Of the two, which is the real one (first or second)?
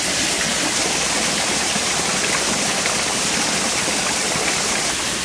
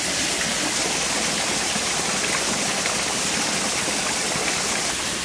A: second